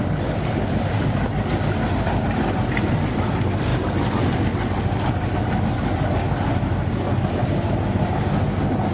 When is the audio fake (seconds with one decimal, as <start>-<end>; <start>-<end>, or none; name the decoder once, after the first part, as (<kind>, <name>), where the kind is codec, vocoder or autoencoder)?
none

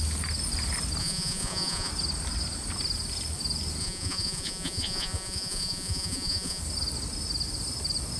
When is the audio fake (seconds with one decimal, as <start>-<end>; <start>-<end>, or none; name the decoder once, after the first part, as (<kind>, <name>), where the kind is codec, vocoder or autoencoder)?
1.0-1.9 (vocoder, Vocos); 3.8-6.6

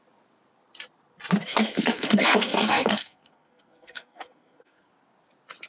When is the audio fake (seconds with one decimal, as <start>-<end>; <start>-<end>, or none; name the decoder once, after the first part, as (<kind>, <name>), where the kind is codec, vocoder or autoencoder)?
1.5-4.9 (codec, SNAC)

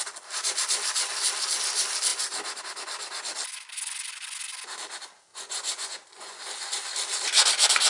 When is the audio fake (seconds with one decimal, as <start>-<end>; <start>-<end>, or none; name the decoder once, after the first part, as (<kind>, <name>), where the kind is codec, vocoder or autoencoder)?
5.3-6.4 (vocoder, Vocos)